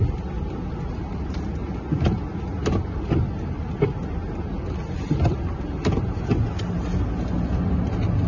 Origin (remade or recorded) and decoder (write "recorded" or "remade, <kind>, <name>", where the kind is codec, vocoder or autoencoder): recorded